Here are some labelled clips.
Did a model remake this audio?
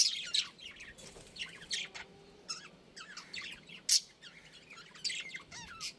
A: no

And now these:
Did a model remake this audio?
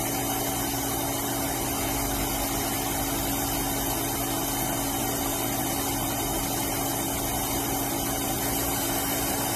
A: no